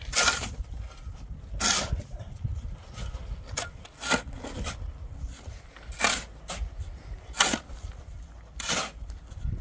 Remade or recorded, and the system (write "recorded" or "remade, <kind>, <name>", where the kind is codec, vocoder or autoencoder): recorded